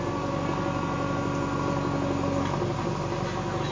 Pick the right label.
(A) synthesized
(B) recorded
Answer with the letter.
B